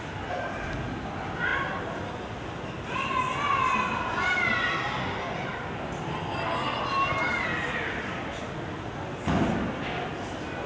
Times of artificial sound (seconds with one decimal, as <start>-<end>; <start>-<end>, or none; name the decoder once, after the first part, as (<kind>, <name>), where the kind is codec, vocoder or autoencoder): none